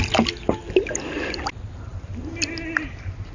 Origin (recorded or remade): recorded